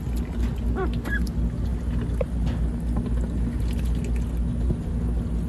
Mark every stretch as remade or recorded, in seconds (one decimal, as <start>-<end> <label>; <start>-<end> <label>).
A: 0.0-5.5 recorded